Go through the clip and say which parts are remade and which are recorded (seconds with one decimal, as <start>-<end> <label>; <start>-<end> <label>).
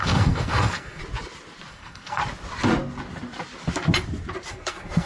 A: 0.0-1.0 remade; 1.0-1.7 recorded; 1.7-2.2 remade; 2.2-4.5 recorded; 4.5-5.1 remade